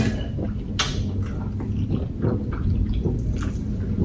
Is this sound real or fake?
real